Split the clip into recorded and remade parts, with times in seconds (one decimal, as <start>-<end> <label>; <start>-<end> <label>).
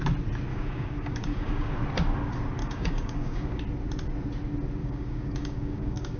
0.0-0.5 recorded; 0.5-1.7 remade; 1.7-2.6 recorded; 2.6-3.6 remade; 3.6-4.8 recorded; 4.8-6.2 remade